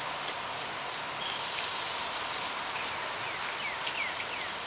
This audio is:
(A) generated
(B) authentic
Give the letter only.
B